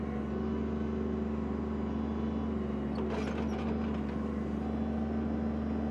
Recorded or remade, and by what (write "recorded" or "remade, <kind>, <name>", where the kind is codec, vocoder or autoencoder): recorded